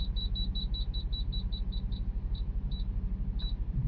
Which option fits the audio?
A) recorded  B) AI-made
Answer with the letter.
A